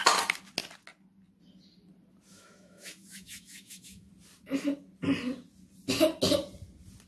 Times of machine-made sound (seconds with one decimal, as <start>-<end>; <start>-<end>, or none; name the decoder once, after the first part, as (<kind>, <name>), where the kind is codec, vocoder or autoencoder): 2.3-4.1 (autoencoder, DAC-VAE)